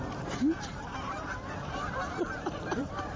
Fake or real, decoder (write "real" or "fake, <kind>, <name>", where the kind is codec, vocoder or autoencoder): fake, vocoder, BigVGAN v2